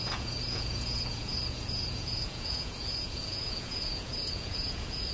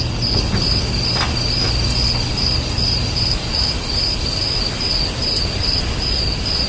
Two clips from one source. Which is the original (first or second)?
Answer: second